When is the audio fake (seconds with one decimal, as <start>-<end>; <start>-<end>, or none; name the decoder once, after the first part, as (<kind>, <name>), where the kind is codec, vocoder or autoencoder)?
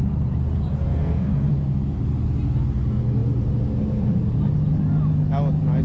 0.9-1.5 (codec, SNAC)